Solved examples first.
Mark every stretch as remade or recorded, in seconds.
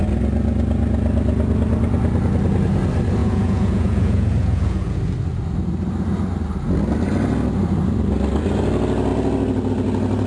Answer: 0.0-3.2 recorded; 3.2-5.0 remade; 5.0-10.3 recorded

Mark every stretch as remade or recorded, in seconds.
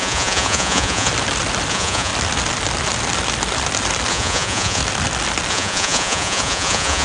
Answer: 0.0-1.1 remade; 1.1-1.7 recorded; 1.7-2.1 remade; 2.1-4.1 recorded; 4.1-4.8 remade; 4.8-5.5 recorded; 5.5-7.0 remade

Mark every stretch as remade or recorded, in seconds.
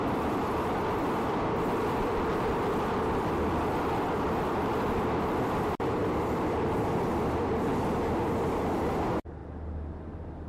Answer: 0.0-7.7 remade; 7.7-8.6 recorded; 8.6-9.4 remade; 9.4-10.1 recorded; 10.1-10.5 remade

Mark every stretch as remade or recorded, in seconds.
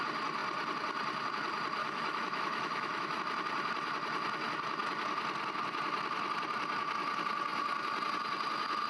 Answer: 0.0-1.8 recorded; 1.8-3.2 remade; 3.2-8.9 recorded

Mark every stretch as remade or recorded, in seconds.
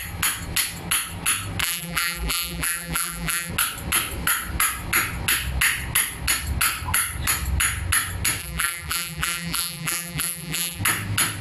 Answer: 0.0-1.6 recorded; 1.6-3.5 remade; 3.5-8.4 recorded; 8.4-10.8 remade; 10.8-11.4 recorded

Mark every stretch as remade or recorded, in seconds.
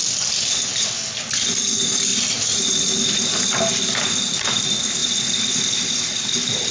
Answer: 0.0-2.1 recorded; 2.1-3.7 remade; 3.7-5.0 recorded; 5.0-6.2 remade; 6.2-6.7 recorded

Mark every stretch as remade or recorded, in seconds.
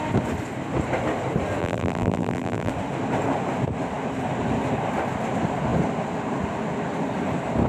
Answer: 0.0-1.6 recorded; 1.6-2.7 remade; 2.7-7.7 recorded